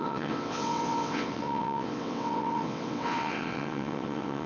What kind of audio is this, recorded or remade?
remade